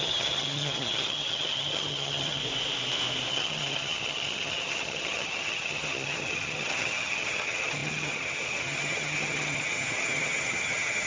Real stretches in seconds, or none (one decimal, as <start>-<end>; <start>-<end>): 2.4-3.3